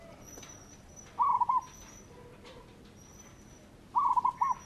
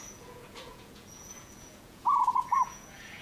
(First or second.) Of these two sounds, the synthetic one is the second